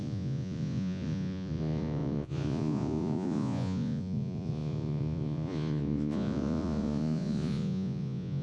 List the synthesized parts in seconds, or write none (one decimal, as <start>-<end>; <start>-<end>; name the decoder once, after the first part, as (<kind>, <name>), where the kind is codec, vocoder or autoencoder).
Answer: 0.0-8.4 (vocoder, Vocos)